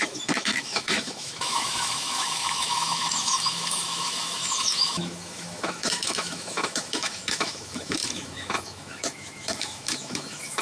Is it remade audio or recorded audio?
remade